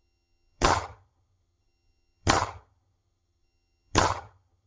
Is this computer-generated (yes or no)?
yes